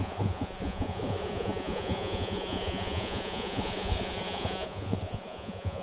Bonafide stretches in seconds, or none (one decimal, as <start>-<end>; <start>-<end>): none